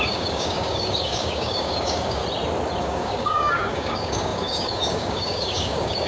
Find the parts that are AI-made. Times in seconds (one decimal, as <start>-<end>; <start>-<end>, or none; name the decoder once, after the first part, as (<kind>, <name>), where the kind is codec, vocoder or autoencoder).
0.0-2.2 (codec, DAC); 2.8-6.1